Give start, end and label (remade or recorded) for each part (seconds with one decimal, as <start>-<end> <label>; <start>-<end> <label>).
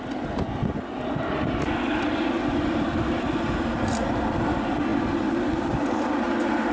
0.0-6.7 recorded